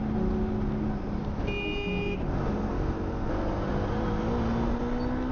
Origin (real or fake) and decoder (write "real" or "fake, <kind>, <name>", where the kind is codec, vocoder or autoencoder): real